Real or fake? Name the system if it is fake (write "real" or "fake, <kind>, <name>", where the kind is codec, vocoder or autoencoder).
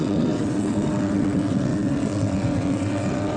fake, vocoder, WaveNeXt